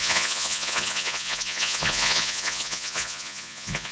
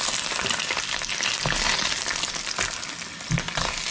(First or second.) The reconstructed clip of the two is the first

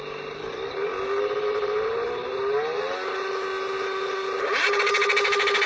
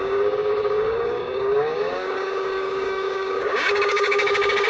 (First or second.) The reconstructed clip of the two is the second